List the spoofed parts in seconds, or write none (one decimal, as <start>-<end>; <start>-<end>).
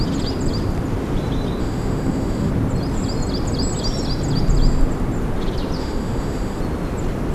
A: 1.6-2.5; 5.8-6.6